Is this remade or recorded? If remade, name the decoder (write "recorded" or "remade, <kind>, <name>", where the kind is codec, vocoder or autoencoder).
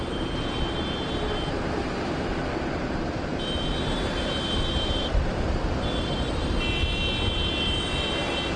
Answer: remade, vocoder, BigVGAN v2